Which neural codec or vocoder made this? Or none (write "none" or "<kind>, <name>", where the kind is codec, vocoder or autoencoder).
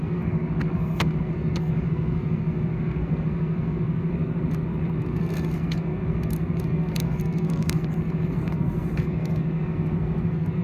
codec, SNAC